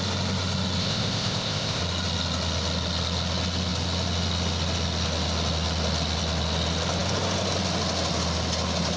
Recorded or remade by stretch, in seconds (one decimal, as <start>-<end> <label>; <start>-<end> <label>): 0.0-0.8 recorded; 0.8-1.8 remade; 1.8-9.0 recorded